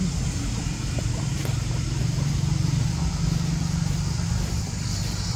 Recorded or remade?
recorded